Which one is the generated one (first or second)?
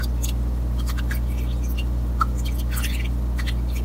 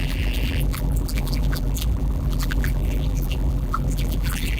second